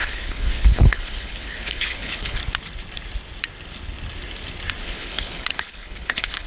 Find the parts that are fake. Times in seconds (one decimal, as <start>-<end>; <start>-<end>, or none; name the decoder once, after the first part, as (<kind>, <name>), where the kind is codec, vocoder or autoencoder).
0.0-2.4 (codec, HILCodec); 4.8-6.5